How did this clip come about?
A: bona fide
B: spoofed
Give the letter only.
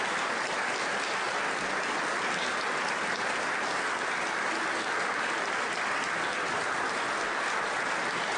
A